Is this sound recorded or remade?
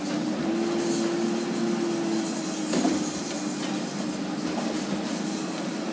recorded